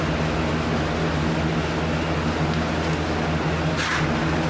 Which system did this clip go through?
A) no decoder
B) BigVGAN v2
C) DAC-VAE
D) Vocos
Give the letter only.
A